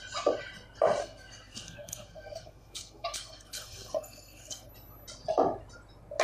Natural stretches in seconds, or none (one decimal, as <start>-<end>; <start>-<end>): 0.0-1.0; 4.7-6.2

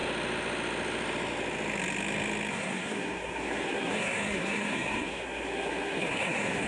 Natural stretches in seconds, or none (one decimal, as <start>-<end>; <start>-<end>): 0.0-2.5

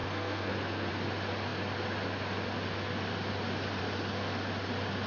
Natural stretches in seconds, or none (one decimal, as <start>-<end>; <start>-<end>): 0.9-5.1